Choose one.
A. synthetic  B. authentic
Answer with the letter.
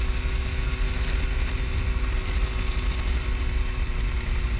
B